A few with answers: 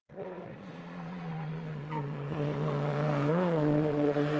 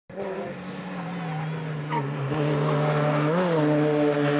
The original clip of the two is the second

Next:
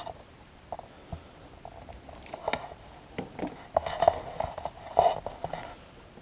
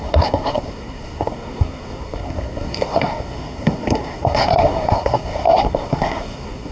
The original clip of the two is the first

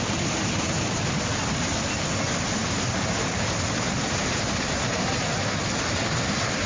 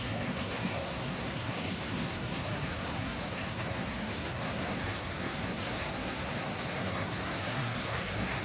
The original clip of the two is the first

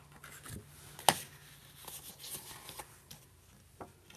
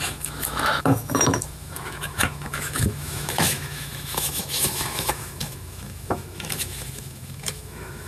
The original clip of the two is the first